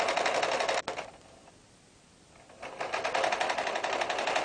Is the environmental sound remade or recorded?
recorded